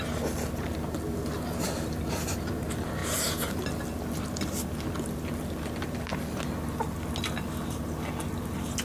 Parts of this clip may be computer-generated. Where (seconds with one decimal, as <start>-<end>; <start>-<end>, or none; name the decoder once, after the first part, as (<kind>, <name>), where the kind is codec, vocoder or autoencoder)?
none